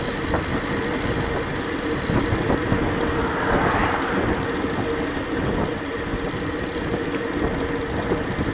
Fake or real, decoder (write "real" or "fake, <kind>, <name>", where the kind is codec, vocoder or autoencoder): real